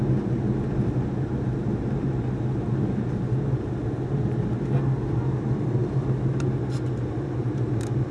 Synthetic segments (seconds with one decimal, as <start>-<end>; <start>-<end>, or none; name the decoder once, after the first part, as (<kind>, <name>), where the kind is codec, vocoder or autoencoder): none